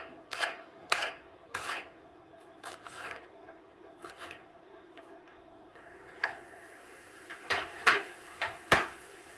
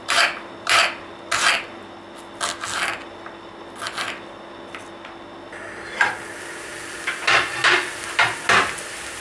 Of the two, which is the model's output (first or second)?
first